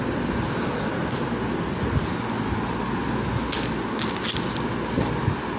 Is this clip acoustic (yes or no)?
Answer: yes